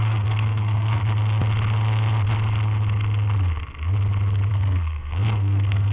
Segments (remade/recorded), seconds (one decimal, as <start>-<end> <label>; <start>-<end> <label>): 0.0-1.0 remade; 1.0-4.5 recorded; 4.5-5.9 remade